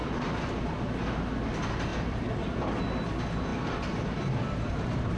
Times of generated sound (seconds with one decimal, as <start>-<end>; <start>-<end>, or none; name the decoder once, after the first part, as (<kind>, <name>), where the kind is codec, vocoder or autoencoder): 0.0-1.3 (vocoder, BigVGAN v2); 1.9-2.8